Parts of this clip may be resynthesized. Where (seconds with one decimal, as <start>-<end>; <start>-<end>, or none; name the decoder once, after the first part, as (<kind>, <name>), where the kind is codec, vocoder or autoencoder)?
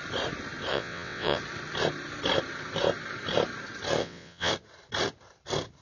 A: 0.7-1.4 (vocoder, WaveNeXt); 4.0-4.5